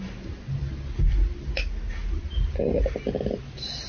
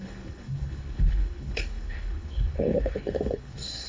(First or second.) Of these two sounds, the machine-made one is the second